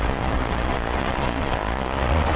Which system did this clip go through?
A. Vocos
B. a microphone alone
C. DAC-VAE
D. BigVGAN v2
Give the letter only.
A